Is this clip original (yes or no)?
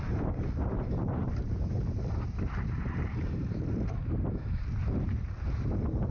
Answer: no